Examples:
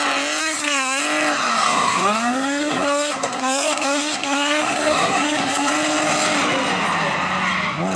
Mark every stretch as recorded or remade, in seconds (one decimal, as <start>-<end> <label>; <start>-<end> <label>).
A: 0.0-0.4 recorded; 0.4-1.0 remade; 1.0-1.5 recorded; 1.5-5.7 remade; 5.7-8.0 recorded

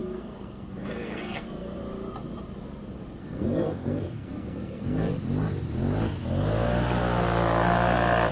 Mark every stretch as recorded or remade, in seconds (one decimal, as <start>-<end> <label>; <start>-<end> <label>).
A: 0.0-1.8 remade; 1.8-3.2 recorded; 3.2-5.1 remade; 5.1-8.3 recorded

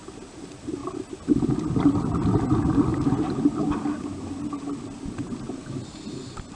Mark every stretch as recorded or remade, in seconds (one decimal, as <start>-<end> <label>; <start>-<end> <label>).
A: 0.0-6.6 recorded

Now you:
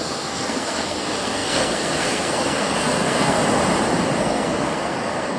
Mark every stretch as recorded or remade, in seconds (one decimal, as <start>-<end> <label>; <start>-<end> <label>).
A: 0.0-3.4 remade; 3.4-4.2 recorded; 4.2-5.4 remade